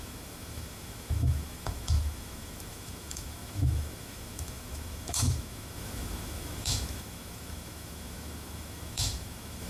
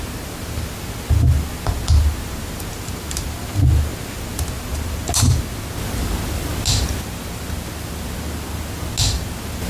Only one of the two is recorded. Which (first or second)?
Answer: second